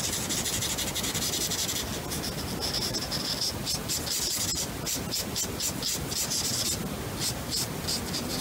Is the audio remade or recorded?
recorded